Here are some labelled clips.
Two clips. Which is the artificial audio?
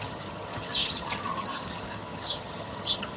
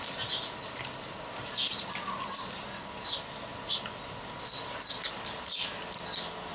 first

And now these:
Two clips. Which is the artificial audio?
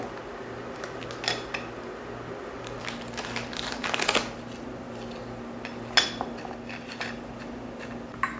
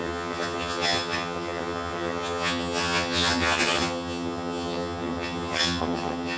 second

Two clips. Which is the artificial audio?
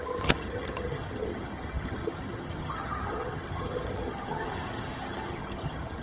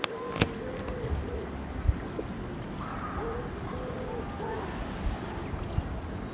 first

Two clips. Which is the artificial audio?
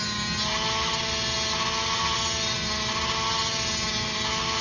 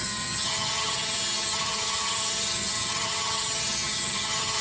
second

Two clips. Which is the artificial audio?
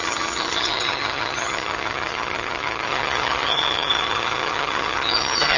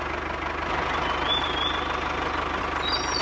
first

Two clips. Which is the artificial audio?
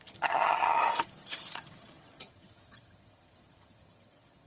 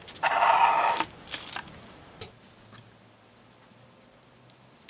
first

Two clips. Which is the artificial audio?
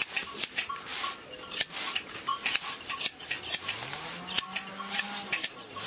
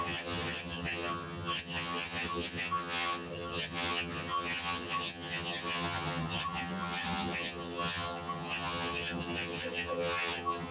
second